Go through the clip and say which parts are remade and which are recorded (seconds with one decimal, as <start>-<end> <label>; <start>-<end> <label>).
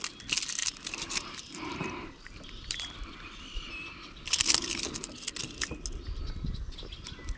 0.0-0.6 recorded; 0.6-2.8 remade; 2.8-7.4 recorded